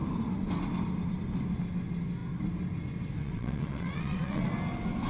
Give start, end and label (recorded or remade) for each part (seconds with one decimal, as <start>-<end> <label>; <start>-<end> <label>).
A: 0.0-3.2 recorded; 3.2-4.4 remade; 4.4-5.1 recorded